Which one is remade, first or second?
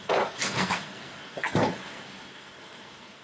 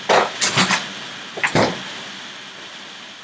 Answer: first